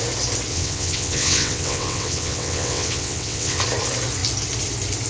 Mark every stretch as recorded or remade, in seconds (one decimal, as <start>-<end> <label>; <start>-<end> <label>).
0.0-0.5 recorded; 0.5-3.6 remade; 3.6-5.1 recorded